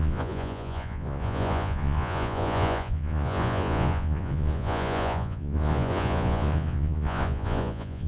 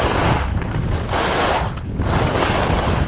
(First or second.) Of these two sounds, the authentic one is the second